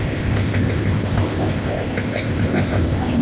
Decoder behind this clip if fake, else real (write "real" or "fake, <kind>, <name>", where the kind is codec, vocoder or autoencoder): fake, codec, ZipCodec